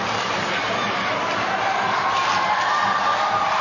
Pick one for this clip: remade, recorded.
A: remade